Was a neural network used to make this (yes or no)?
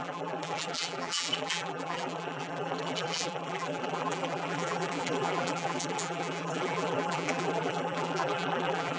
yes